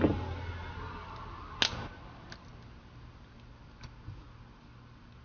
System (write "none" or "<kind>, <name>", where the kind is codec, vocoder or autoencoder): none